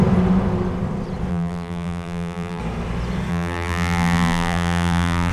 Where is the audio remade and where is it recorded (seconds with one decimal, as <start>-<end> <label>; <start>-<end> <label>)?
0.0-1.3 recorded; 1.3-2.6 remade; 2.6-3.3 recorded; 3.3-5.3 remade